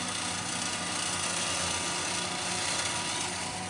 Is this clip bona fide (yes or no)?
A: yes